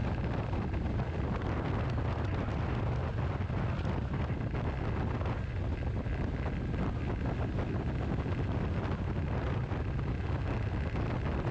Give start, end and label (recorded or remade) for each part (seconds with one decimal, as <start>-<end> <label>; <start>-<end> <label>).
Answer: 0.0-1.7 remade; 1.7-11.5 recorded